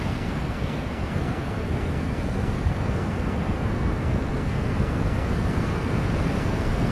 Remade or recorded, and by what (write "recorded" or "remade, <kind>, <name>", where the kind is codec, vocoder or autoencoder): remade, codec, SNAC